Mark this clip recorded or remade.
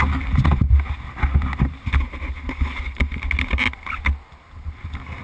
recorded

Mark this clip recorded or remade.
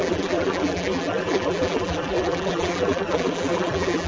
remade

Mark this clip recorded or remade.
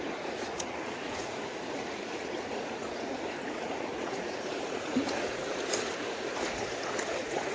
remade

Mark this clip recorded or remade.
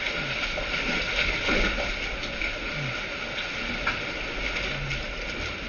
recorded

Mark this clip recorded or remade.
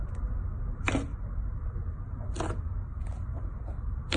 recorded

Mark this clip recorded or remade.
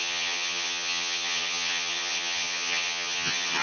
remade